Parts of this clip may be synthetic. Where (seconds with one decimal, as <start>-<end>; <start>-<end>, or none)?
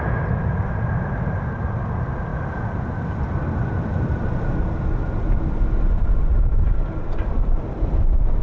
none